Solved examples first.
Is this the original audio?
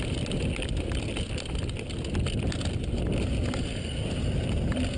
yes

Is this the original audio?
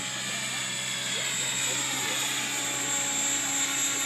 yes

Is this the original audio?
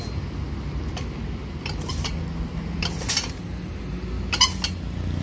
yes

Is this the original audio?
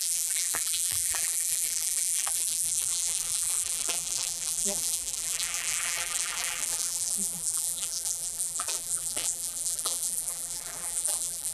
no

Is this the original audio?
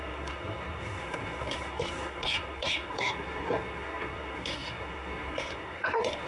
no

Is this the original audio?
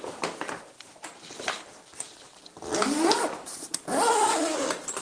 yes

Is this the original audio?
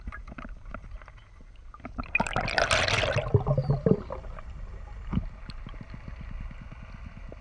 yes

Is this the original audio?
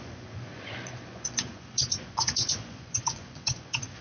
no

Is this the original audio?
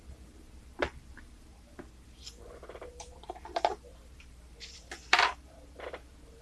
no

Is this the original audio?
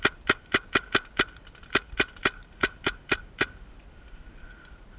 yes